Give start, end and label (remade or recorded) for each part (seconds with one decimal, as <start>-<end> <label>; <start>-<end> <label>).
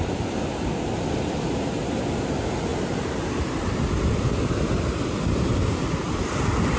0.0-6.8 recorded